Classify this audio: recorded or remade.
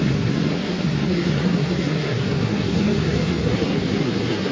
remade